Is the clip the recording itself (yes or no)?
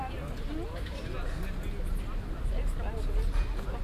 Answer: yes